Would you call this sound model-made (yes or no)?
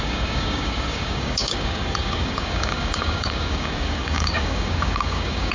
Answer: yes